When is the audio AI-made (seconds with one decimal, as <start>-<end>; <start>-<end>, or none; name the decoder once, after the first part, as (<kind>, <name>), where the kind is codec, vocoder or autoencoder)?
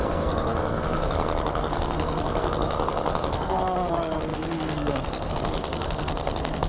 0.0-6.7 (codec, SNAC)